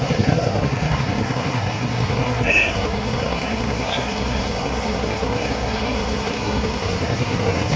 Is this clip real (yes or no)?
no